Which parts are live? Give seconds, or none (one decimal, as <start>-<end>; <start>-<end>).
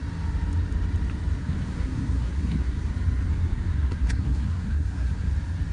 0.0-1.4; 2.9-3.3; 5.3-5.7